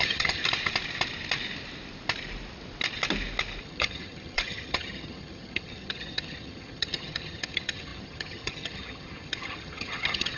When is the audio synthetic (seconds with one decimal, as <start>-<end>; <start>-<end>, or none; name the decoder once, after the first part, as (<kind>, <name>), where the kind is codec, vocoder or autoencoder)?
0.0-0.4 (vocoder, HiFi-GAN); 3.6-10.4